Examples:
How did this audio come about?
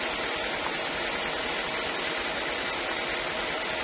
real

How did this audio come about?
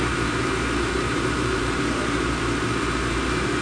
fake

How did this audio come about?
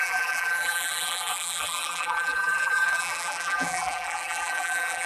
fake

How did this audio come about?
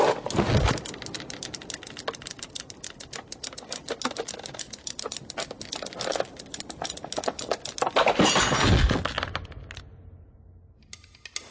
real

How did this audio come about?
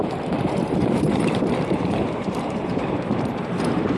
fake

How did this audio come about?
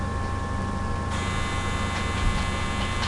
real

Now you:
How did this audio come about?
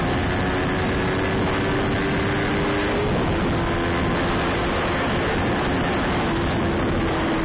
real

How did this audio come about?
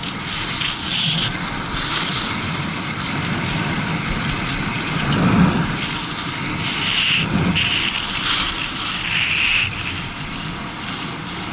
real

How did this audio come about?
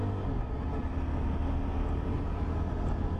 real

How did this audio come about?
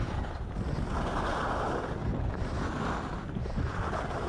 real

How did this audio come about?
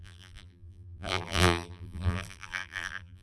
fake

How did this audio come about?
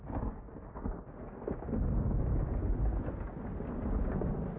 real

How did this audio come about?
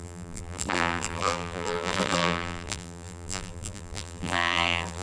fake